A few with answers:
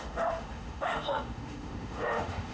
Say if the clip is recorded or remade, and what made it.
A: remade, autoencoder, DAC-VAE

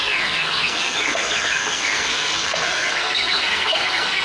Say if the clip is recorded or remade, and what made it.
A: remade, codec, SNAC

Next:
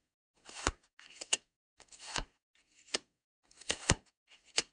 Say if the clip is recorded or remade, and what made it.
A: remade, codec, SNAC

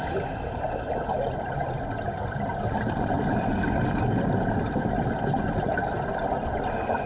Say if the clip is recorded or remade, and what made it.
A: recorded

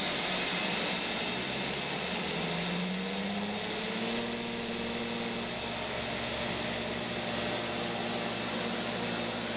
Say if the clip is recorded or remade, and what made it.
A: recorded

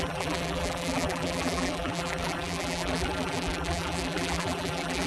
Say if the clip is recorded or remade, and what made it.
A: remade, vocoder, BigVGAN v2